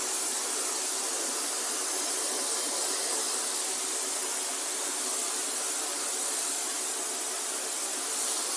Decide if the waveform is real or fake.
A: real